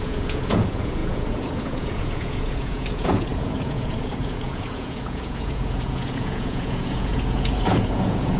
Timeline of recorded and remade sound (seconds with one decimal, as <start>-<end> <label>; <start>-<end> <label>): 0.0-8.4 remade

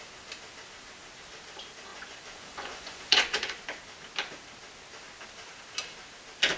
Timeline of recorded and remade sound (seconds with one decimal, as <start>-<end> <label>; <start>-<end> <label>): 0.0-1.9 recorded; 1.9-3.6 remade; 3.6-6.6 recorded

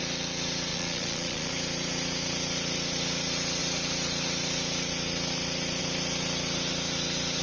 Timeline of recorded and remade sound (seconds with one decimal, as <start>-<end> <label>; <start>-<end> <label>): 0.0-0.7 recorded; 0.7-1.5 remade; 1.5-7.4 recorded

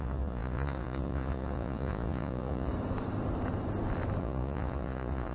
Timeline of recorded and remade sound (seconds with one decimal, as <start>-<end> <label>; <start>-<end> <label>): 0.0-2.7 remade; 2.7-4.2 recorded; 4.2-5.3 remade

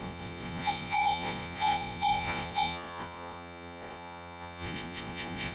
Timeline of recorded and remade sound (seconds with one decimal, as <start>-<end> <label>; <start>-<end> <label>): 0.0-5.5 remade

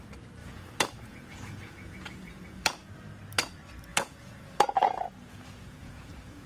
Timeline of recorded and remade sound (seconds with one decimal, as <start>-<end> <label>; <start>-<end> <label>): 0.0-0.4 recorded; 0.4-2.9 remade; 2.9-3.9 recorded; 3.9-6.5 remade

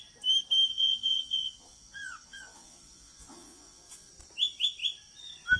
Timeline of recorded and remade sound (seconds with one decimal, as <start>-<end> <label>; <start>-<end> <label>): 0.0-0.7 recorded; 0.7-4.1 remade; 4.1-5.6 recorded